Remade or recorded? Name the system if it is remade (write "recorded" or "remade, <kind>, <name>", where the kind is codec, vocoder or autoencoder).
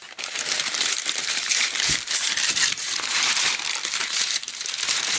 remade, vocoder, BigVGAN v2